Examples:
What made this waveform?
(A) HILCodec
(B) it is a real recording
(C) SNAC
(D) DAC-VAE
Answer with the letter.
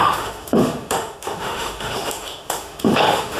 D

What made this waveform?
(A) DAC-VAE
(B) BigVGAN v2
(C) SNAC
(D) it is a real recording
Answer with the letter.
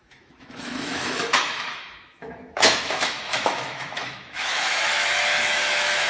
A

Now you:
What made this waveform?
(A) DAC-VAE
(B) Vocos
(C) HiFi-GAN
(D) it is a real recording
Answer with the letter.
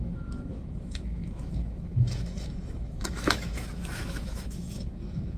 A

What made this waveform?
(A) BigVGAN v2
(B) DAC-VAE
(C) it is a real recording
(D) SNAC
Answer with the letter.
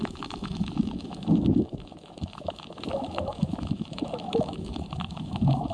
B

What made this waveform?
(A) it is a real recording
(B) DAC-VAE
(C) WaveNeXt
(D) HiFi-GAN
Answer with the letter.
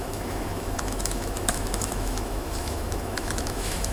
B